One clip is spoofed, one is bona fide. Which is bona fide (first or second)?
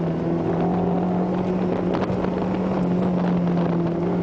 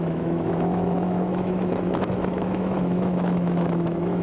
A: first